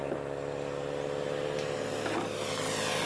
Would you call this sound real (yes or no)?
yes